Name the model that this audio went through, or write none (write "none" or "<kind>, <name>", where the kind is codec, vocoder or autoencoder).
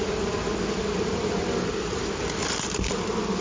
none